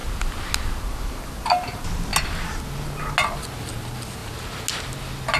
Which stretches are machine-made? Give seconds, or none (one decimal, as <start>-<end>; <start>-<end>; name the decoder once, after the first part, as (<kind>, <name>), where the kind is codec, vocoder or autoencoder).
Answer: none